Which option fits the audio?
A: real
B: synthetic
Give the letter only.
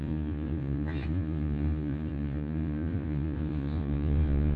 B